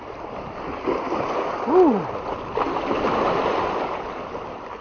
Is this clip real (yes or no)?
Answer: yes